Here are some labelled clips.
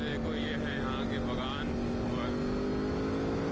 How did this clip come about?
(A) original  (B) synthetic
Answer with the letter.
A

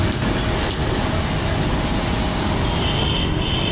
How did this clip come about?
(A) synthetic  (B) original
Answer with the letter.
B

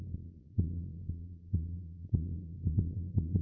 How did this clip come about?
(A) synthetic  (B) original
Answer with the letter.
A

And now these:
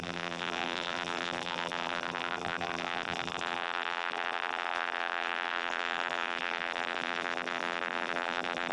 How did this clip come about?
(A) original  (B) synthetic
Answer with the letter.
B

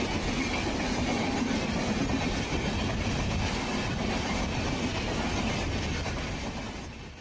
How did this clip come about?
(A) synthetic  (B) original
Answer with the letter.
B